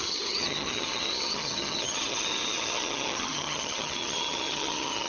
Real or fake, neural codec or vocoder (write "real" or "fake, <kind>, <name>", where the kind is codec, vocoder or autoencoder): fake, vocoder, HiFi-GAN